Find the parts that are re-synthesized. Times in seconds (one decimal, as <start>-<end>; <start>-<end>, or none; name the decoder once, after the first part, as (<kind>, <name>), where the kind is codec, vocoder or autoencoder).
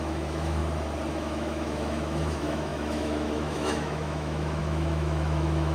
0.0-0.6 (autoencoder, DAC-VAE); 1.1-5.7